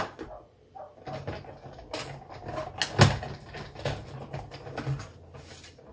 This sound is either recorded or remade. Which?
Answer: recorded